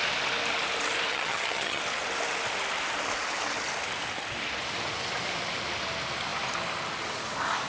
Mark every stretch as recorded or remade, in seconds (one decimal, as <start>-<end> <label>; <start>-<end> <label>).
0.0-1.1 recorded; 1.1-1.8 remade; 1.8-7.7 recorded